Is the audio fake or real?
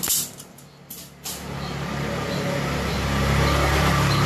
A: real